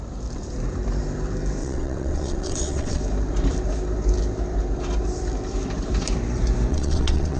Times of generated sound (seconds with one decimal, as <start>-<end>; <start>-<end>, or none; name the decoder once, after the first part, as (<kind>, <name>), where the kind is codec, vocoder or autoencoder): 1.6-3.0 (vocoder, WaveNeXt); 6.7-7.4